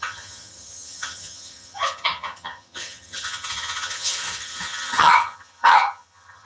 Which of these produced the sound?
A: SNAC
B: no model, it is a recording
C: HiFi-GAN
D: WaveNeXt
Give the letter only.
C